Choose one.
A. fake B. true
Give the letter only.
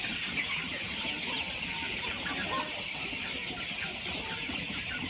B